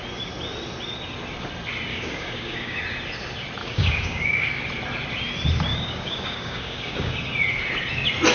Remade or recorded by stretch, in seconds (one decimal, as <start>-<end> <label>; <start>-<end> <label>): 0.0-1.9 recorded; 1.9-2.8 remade; 2.8-3.6 recorded; 3.6-4.6 remade; 4.6-5.7 recorded; 5.7-7.1 remade; 7.1-8.3 recorded